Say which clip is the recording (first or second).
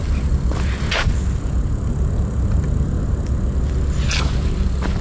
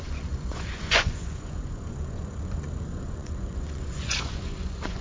first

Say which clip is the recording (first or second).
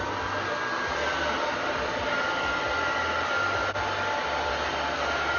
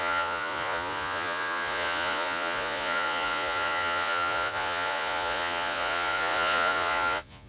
first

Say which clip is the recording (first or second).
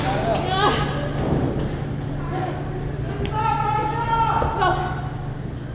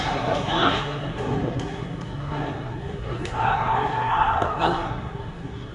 first